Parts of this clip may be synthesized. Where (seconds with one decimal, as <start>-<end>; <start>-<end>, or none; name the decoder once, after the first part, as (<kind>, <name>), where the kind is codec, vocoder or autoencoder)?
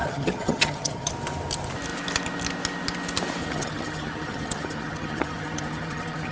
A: 0.0-1.1 (vocoder, HiFi-GAN); 3.4-6.3